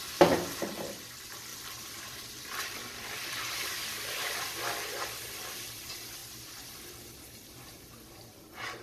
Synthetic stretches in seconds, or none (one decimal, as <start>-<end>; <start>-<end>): 0.0-6.2; 6.9-8.8